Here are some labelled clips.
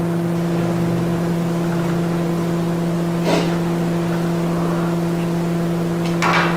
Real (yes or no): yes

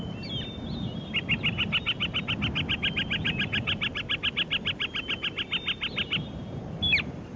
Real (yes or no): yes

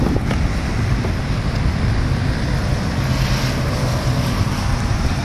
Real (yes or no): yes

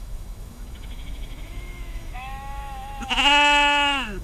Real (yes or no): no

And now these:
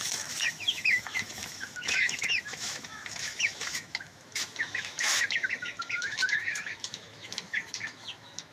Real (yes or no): no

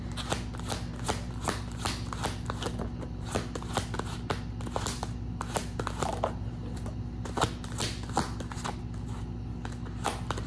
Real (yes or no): yes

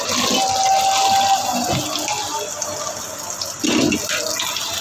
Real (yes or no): yes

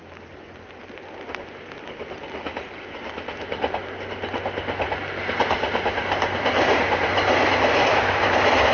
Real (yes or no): yes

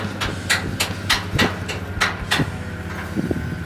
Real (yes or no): yes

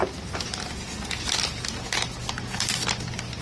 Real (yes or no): yes